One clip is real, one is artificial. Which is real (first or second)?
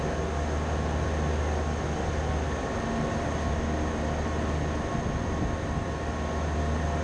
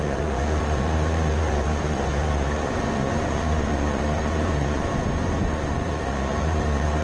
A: first